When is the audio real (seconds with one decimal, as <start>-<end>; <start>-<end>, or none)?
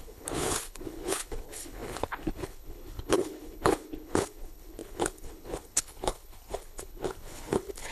none